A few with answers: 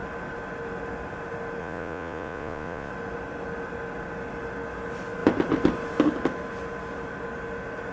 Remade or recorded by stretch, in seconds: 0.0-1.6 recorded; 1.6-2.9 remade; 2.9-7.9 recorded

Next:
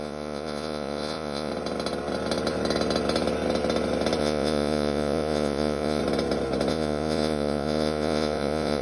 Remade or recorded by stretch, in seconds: 0.0-1.5 remade; 1.5-4.2 recorded; 4.2-6.0 remade; 6.0-6.7 recorded; 6.7-8.8 remade

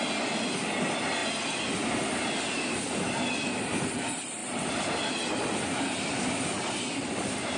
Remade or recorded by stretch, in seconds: 0.0-7.6 recorded

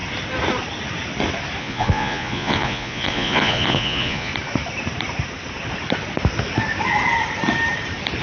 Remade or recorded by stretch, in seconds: 0.0-1.6 recorded; 1.6-4.3 remade; 4.3-8.2 recorded

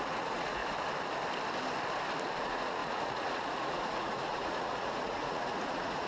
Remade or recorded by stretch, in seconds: 0.0-0.6 remade; 0.6-2.4 recorded; 2.4-6.1 remade

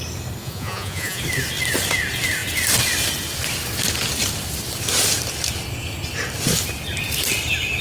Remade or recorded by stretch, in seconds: 0.0-0.4 recorded; 0.4-1.2 remade; 1.2-7.8 recorded